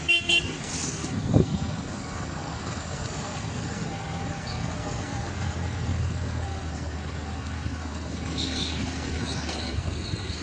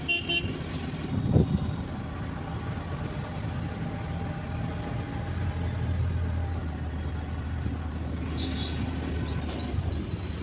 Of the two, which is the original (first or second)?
second